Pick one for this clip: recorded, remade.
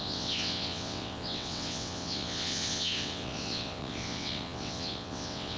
remade